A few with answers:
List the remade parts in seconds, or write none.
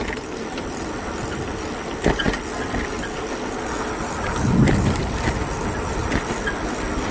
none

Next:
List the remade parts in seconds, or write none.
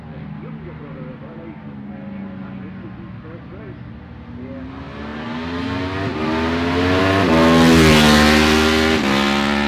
none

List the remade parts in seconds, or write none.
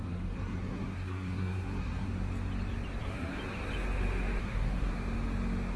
0.0-2.1 (codec, SNAC); 3.0-3.4; 4.4-4.9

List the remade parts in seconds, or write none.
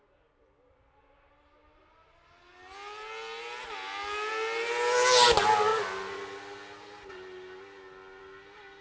none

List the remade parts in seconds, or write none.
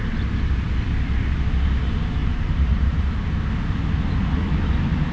2.2-3.5 (vocoder, BigVGAN v2)